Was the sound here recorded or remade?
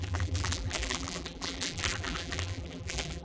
remade